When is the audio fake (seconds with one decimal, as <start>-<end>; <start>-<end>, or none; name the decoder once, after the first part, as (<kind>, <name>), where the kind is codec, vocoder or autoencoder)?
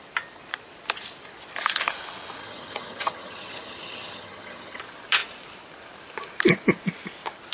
2.4-4.8 (vocoder, HiFi-GAN)